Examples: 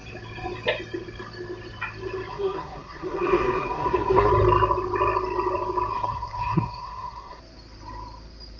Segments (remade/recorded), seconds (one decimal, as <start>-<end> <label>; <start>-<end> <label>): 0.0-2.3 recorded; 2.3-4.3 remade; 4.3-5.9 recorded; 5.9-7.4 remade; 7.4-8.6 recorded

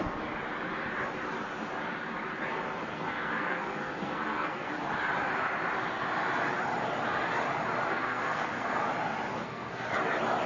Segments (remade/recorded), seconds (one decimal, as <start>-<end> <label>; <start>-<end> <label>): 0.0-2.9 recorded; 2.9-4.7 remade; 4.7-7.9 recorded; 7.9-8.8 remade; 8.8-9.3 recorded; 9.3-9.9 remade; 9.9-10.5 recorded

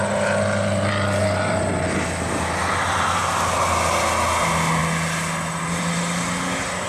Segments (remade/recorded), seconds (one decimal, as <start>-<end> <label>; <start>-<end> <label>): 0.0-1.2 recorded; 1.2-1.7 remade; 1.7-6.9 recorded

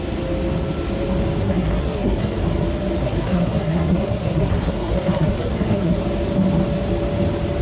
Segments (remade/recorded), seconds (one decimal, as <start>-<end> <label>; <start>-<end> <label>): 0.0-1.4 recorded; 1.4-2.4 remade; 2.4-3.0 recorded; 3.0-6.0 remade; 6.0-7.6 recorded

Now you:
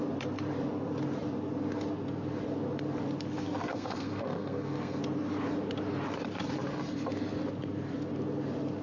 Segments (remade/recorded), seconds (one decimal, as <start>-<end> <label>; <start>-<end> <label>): 0.0-3.7 recorded; 3.7-5.0 remade; 5.0-8.8 recorded

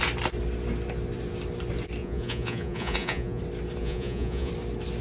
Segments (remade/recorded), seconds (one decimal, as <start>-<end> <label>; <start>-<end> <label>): 0.0-2.0 recorded; 2.0-3.4 remade; 3.4-3.8 recorded; 3.8-4.5 remade; 4.5-5.0 recorded

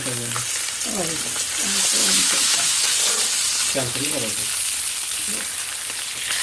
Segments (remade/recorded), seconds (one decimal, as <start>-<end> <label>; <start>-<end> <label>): 0.0-2.0 recorded; 2.0-3.0 remade; 3.0-6.4 recorded

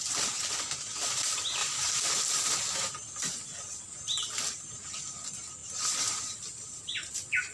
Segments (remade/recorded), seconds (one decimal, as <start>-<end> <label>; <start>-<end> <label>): 0.0-1.6 recorded; 1.6-2.1 remade; 2.1-5.6 recorded; 5.6-6.9 remade; 6.9-7.5 recorded